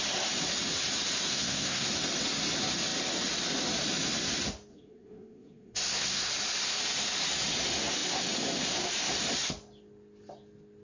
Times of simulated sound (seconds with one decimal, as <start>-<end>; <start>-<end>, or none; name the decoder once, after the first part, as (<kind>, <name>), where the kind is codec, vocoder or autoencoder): 1.3-1.9 (codec, SNAC); 4.7-6.3